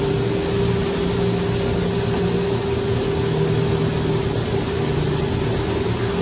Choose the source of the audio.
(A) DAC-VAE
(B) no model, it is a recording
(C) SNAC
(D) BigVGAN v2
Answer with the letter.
B